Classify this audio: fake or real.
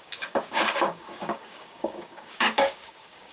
fake